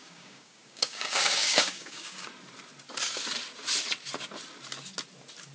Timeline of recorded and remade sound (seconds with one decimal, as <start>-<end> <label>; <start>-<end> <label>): 0.0-2.3 remade; 2.3-5.5 recorded